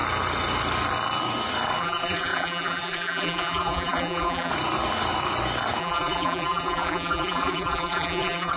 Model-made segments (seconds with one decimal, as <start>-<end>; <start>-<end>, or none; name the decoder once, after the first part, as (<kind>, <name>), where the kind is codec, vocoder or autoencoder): 1.8-4.5 (vocoder, BigVGAN v2); 5.8-8.6